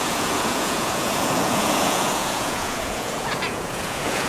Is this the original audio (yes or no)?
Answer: no